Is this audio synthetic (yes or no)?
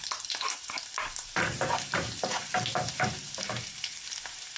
yes